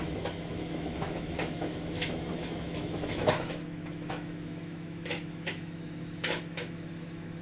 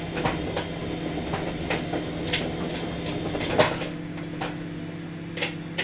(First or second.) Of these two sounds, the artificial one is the first